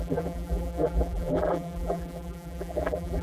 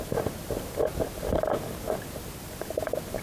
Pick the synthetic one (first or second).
first